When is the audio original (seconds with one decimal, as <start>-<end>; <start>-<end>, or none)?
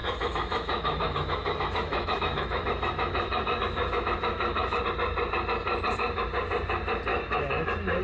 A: 4.8-7.1